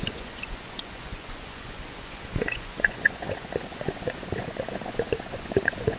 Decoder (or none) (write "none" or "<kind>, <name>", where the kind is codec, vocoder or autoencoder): vocoder, Vocos